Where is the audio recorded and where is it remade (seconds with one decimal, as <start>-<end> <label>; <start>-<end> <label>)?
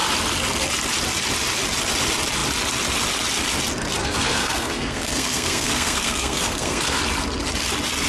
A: 0.0-4.0 recorded; 4.0-7.0 remade; 7.0-8.1 recorded